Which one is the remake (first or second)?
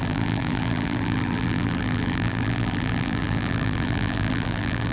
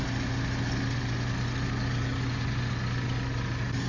first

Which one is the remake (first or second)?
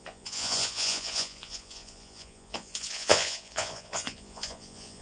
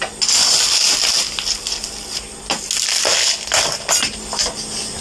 first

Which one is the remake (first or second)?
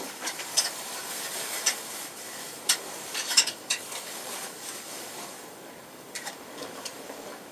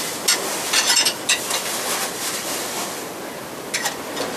first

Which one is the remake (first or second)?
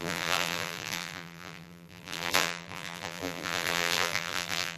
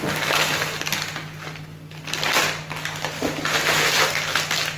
first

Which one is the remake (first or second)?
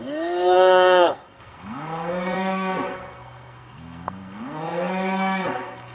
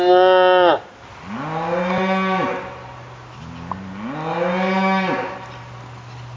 first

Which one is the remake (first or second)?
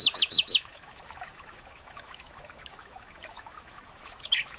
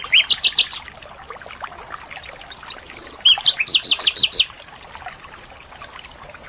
first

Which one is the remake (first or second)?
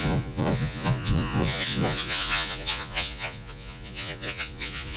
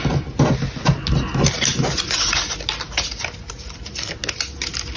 first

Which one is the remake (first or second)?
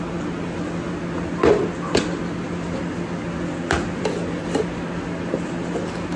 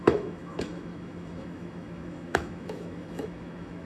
second